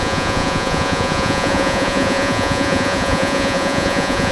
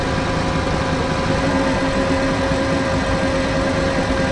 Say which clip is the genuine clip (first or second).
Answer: second